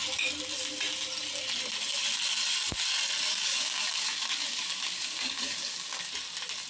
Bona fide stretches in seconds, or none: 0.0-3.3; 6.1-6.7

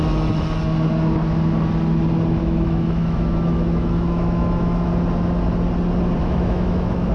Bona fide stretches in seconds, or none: 0.0-2.4; 4.9-6.2

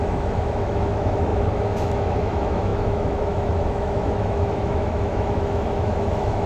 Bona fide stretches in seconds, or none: none

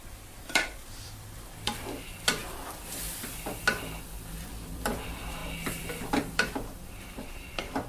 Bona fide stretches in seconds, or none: 2.4-4.4

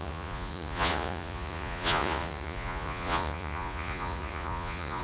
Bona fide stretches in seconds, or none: none

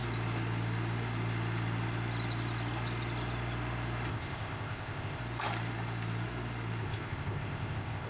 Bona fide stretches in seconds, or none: 0.0-4.1; 5.2-6.8